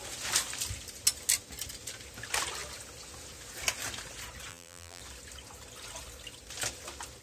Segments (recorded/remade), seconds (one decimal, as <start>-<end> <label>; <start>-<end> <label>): 0.0-4.5 recorded; 4.5-5.0 remade; 5.0-7.2 recorded